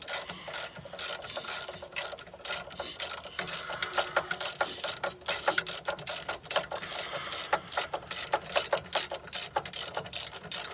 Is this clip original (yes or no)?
yes